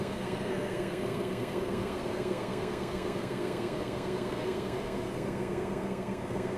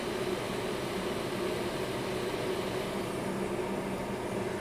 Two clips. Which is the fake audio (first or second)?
first